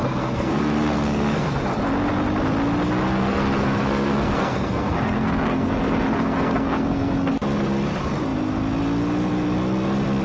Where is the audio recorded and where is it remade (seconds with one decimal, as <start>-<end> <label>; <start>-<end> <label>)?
0.0-1.6 remade; 1.6-3.1 recorded; 3.1-7.3 remade; 7.3-10.2 recorded